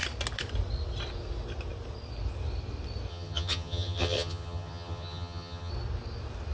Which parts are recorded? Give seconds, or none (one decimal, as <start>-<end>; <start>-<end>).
0.0-3.1; 5.7-6.5